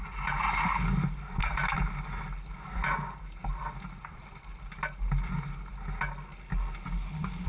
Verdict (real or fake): real